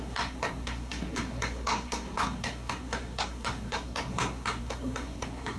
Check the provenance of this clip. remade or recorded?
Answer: remade